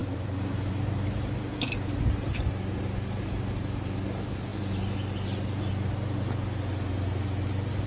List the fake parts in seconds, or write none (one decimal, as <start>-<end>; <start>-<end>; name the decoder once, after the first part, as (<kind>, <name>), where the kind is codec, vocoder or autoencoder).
0.0-2.3 (vocoder, BigVGAN v2)